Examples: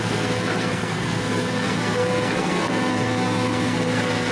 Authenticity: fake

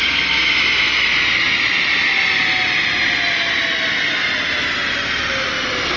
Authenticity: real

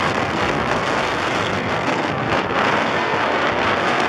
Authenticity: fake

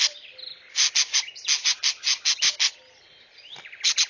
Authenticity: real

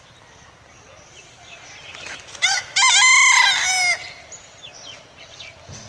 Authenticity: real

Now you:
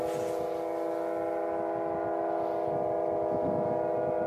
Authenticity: real